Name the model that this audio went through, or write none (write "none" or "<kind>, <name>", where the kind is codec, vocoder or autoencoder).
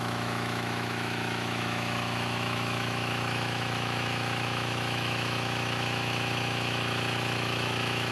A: autoencoder, DAC-VAE